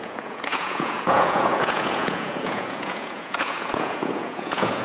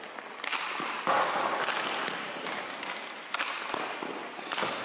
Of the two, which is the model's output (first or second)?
first